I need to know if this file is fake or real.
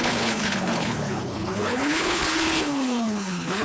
fake